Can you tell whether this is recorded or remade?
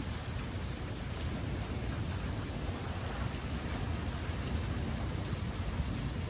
recorded